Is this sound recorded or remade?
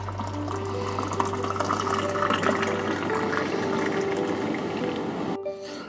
recorded